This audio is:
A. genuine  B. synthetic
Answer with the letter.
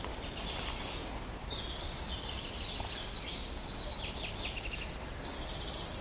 A